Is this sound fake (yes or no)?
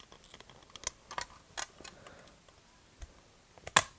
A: no